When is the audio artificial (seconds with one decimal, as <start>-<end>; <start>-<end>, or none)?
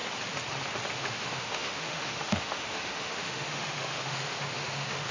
0.9-5.1